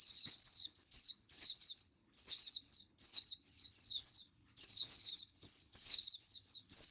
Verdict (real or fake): fake